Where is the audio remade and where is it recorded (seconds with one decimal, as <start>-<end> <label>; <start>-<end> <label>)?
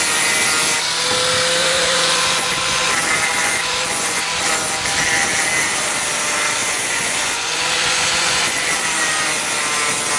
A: 0.0-1.6 recorded; 1.6-2.9 remade; 2.9-3.4 recorded; 3.4-4.2 remade; 4.2-6.6 recorded; 6.6-8.7 remade; 8.7-10.2 recorded